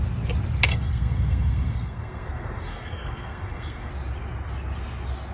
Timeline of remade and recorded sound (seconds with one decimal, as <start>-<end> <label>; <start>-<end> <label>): 0.0-0.7 recorded; 0.7-3.9 remade; 3.9-5.3 recorded